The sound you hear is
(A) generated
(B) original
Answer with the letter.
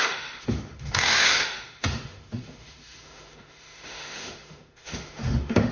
A